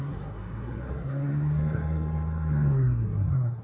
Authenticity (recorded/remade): remade